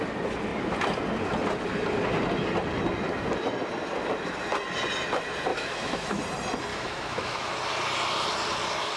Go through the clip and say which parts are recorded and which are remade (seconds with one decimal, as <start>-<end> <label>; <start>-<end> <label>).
0.0-5.5 recorded; 5.5-6.2 remade; 6.2-6.7 recorded; 6.7-7.5 remade; 7.5-9.0 recorded